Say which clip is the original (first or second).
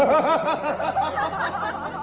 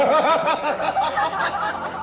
first